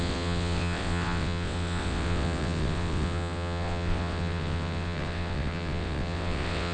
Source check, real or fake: fake